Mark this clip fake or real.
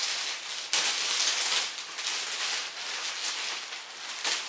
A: real